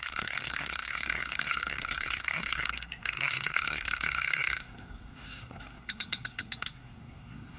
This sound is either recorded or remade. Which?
remade